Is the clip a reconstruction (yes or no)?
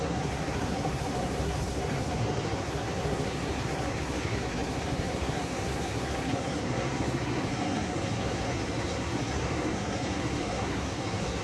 yes